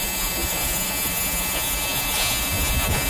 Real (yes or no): no